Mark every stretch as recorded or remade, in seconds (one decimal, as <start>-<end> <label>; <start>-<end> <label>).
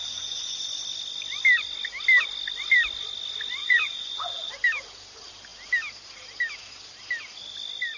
0.0-0.6 remade; 0.6-3.6 recorded; 3.6-4.5 remade; 4.5-8.0 recorded